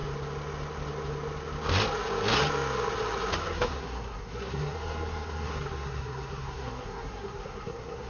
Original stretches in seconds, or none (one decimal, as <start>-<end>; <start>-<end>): 0.0-3.4